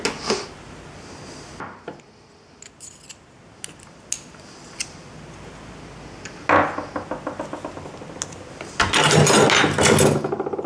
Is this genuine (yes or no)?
yes